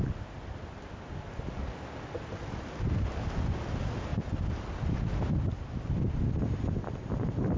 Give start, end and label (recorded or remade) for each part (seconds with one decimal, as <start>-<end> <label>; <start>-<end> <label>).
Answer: 0.0-7.6 recorded